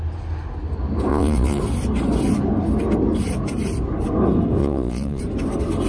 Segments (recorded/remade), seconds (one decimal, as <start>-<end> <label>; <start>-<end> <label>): 0.0-1.1 recorded; 1.1-1.6 remade; 1.6-4.6 recorded; 4.6-5.2 remade; 5.2-5.9 recorded